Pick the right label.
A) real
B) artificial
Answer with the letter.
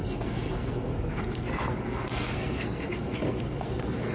B